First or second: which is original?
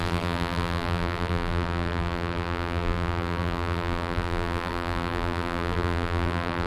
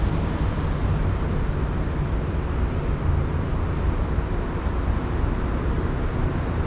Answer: second